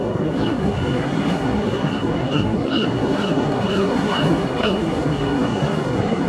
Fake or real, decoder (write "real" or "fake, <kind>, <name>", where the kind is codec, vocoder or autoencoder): fake, codec, SNAC